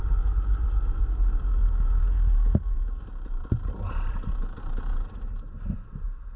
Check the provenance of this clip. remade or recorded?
remade